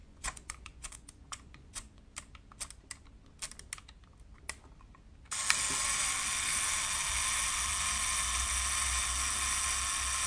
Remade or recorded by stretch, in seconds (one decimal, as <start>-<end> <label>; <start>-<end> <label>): 0.0-2.0 remade; 2.0-10.3 recorded